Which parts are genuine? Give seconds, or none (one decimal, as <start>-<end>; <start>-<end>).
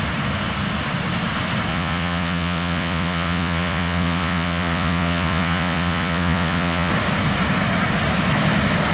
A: 0.0-1.7; 6.9-8.9